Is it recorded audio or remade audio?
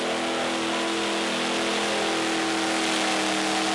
recorded